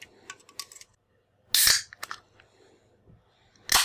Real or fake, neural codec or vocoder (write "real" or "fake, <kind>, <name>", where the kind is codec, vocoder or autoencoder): real